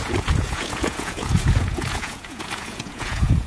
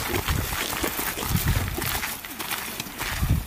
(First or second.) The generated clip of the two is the first